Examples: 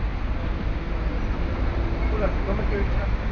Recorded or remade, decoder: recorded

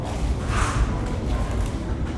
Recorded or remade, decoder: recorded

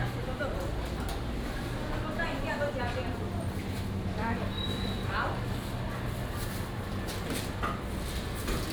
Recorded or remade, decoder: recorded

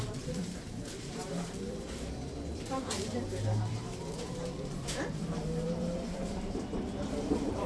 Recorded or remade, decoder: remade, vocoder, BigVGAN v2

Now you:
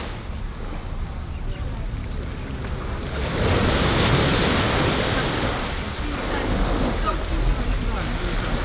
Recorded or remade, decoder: recorded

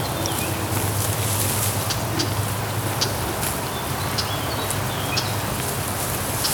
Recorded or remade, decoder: recorded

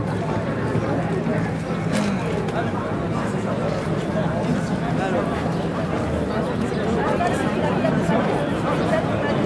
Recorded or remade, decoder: recorded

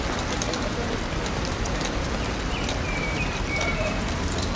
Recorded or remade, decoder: remade, vocoder, BigVGAN v2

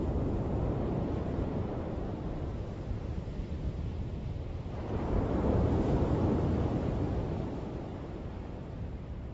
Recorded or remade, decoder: remade, vocoder, BigVGAN v2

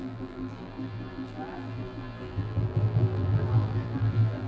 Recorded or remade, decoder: remade, vocoder, BigVGAN v2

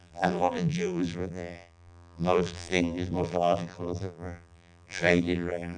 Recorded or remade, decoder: remade, vocoder, BigVGAN v2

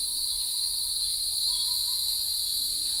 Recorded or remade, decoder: recorded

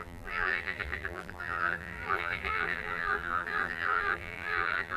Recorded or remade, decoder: remade, vocoder, BigVGAN v2